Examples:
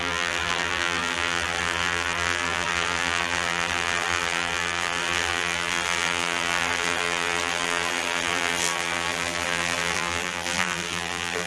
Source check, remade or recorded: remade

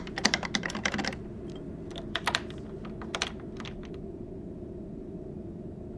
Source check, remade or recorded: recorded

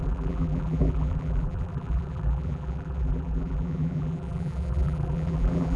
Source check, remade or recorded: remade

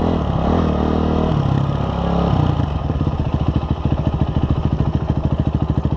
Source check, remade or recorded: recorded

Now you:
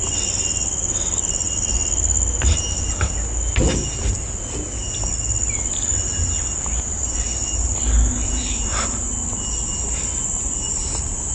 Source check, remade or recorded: recorded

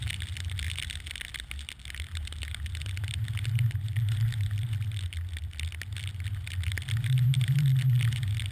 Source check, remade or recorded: recorded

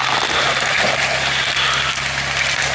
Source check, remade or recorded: recorded